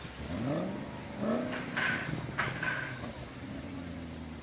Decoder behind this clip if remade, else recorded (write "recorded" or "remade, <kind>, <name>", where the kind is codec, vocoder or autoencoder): recorded